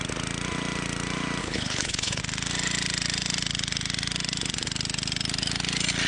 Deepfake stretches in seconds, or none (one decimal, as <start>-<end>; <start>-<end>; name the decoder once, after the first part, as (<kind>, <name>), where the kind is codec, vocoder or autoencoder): 1.4-2.2 (codec, HILCodec)